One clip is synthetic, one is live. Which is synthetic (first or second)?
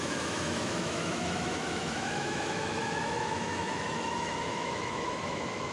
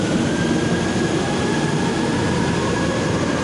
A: first